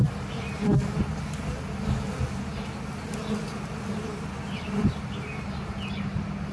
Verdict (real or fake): real